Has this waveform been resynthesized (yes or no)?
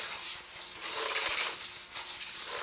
no